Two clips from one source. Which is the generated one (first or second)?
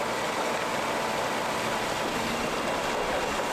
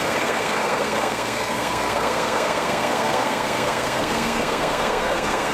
second